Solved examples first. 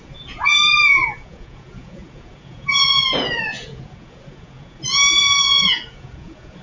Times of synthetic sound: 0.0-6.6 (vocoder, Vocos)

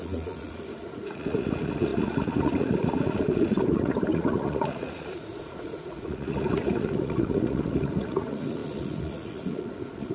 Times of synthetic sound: 0.0-10.1 (vocoder, Vocos)